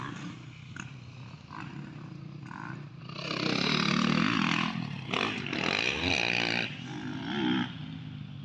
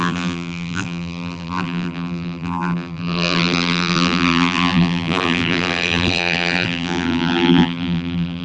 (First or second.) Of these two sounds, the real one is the first